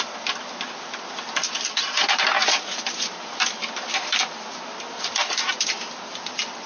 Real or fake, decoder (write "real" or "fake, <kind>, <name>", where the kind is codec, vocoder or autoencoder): real